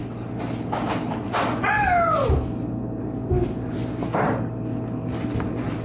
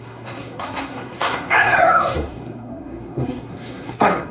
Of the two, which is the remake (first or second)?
second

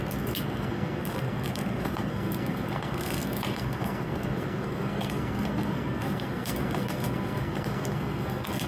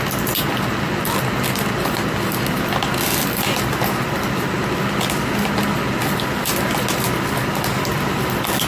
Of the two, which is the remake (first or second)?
first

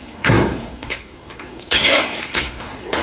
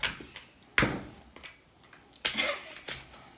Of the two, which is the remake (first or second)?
first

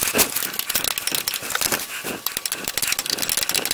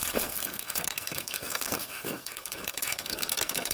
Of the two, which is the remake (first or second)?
second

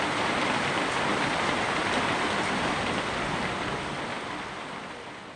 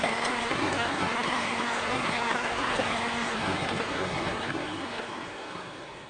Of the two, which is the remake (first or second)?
second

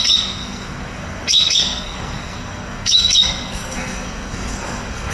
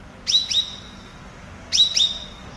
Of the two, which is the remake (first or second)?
first